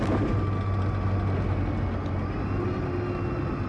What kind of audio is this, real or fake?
real